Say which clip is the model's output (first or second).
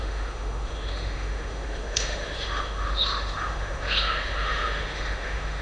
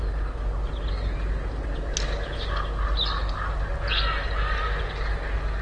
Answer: first